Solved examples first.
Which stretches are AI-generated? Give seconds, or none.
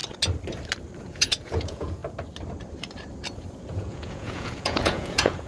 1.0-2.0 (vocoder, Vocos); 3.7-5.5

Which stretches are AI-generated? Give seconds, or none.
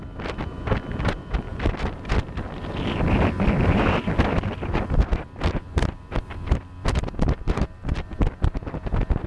0.0-9.3 (vocoder, BigVGAN v2)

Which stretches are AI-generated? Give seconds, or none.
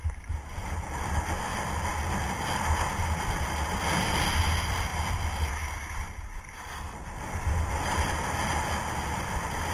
0.0-0.8 (vocoder, BigVGAN v2)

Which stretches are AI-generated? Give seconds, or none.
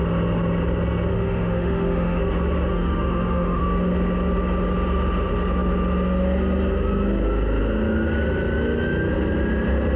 1.1-2.2 (autoencoder, DAC-VAE); 2.7-3.6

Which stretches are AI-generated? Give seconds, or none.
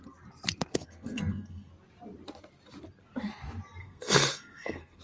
0.7-1.7 (codec, SNAC); 3.8-5.0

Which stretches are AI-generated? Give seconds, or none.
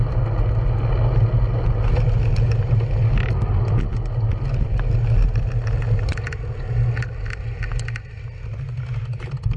none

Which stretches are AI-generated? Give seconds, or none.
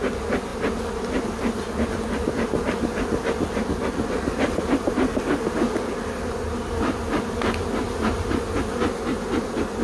none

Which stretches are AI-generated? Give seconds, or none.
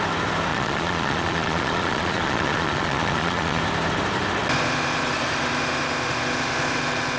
0.5-3.6 (vocoder, Vocos)